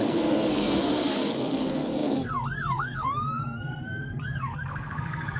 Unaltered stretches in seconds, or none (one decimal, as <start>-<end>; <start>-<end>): none